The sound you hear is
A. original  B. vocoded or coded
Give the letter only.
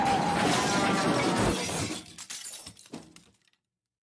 A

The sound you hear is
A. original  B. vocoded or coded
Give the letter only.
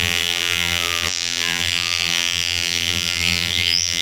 B